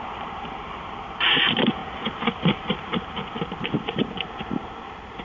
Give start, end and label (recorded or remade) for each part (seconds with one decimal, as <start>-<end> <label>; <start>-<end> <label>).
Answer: 0.0-1.8 remade; 1.8-5.2 recorded